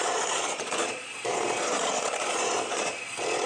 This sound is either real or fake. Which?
fake